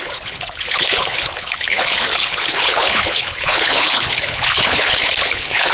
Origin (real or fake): fake